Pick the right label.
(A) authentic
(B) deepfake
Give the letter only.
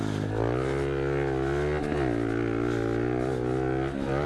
A